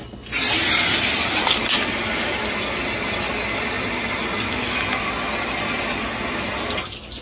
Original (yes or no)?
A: yes